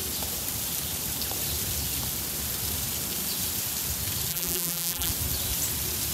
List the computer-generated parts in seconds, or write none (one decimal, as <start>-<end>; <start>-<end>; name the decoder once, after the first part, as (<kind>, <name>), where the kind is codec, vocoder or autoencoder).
4.3-5.1 (vocoder, BigVGAN v2)